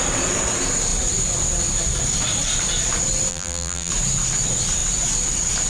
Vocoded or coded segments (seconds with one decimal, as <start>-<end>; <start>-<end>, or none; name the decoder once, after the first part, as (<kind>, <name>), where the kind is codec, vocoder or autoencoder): 3.3-3.9 (vocoder, BigVGAN v2)